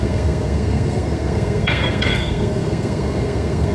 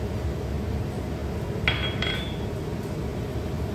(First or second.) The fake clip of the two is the first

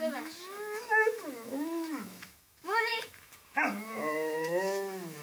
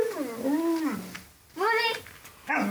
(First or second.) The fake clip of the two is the first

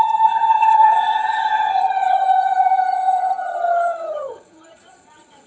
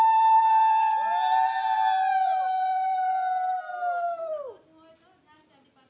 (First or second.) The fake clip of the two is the first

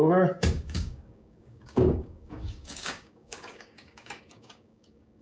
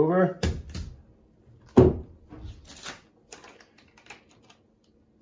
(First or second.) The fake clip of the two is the first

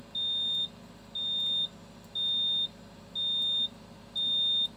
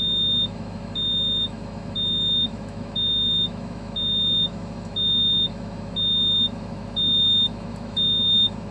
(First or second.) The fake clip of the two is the second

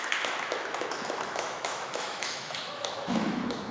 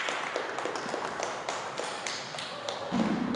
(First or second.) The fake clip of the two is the first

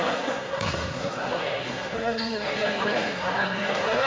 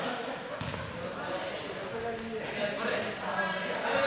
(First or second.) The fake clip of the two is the first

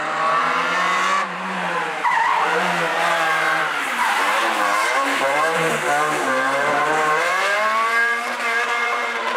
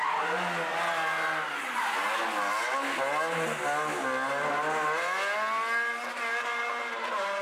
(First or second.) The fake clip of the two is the first